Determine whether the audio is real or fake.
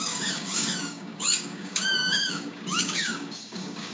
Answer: fake